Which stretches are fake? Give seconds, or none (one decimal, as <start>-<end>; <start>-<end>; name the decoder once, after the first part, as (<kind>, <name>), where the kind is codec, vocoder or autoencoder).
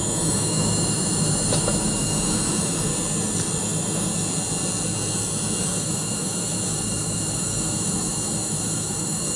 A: 0.0-2.9 (autoencoder, DAC-VAE); 3.6-4.1; 5.6-9.4